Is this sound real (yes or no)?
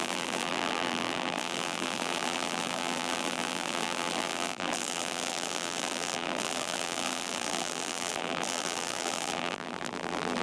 no